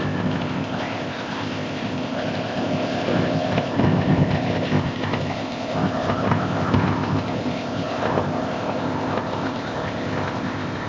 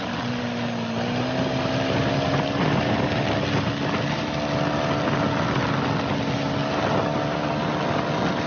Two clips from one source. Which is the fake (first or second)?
first